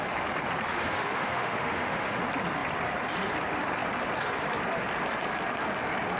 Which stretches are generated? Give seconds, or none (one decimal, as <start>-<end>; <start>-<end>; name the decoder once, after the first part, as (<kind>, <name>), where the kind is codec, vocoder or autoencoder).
0.7-2.2 (autoencoder, DAC-VAE)